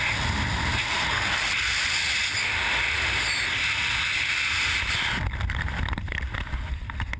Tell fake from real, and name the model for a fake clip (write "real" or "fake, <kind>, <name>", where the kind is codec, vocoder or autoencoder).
real